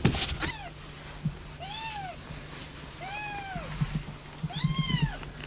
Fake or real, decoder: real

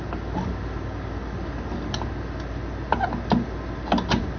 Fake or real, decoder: real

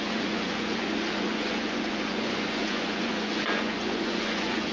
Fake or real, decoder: fake, vocoder, Vocos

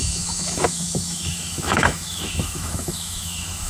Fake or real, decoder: fake, autoencoder, DAC-VAE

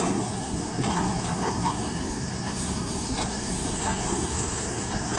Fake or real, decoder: fake, codec, SNAC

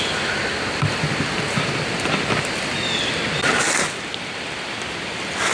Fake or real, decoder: real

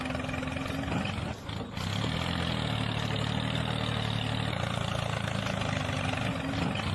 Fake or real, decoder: real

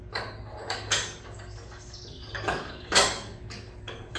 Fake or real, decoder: fake, codec, DAC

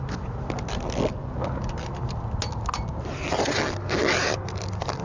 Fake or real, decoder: real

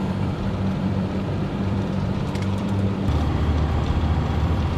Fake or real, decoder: fake, vocoder, BigVGAN v2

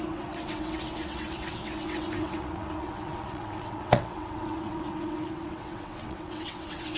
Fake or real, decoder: fake, vocoder, WaveNeXt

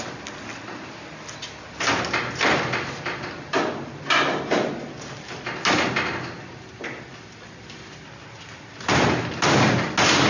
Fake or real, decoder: real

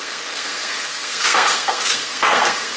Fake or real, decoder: fake, codec, SNAC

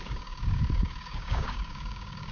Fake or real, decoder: fake, codec, DAC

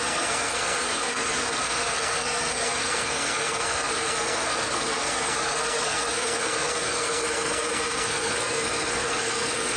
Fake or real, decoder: fake, codec, SNAC